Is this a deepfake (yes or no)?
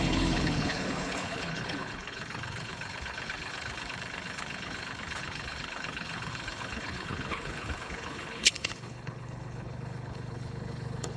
yes